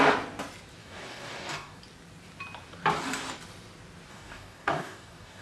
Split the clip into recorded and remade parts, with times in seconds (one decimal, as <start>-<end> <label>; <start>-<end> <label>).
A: 0.0-0.8 recorded; 0.8-1.8 remade; 1.8-4.1 recorded; 4.1-5.4 remade